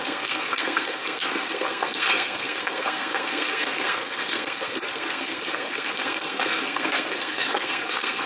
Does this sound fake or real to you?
fake